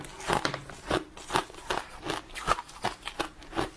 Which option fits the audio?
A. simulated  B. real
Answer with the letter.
B